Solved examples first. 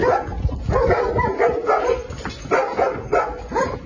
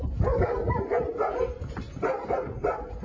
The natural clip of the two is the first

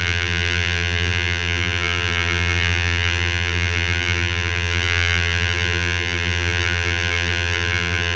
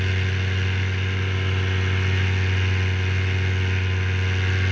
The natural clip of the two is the second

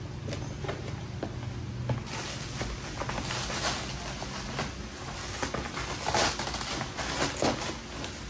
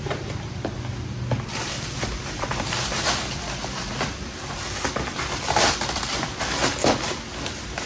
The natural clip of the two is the first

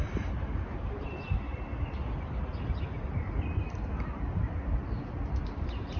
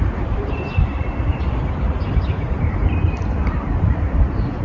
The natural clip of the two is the first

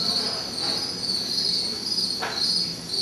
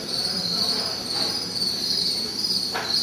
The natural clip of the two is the first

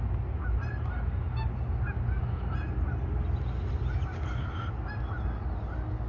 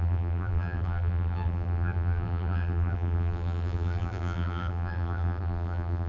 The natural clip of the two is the first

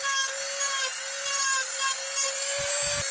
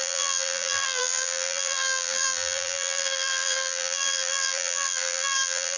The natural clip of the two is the first